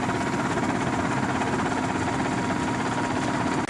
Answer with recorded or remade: recorded